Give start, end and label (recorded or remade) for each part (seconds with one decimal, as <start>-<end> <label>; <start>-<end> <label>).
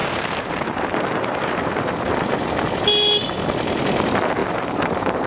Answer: 0.0-2.3 remade; 2.3-4.4 recorded; 4.4-5.3 remade